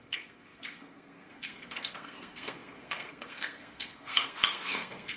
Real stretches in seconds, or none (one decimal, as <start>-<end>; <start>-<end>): none